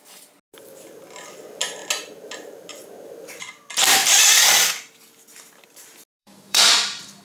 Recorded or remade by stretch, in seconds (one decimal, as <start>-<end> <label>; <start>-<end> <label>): 0.0-6.2 recorded; 6.2-6.7 remade; 6.7-7.2 recorded